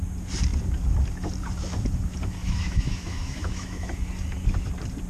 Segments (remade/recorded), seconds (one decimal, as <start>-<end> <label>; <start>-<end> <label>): 0.0-2.4 recorded; 2.4-3.9 remade; 3.9-5.1 recorded